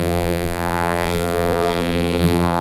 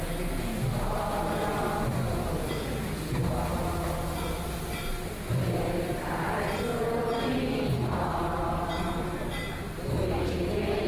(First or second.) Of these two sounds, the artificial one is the first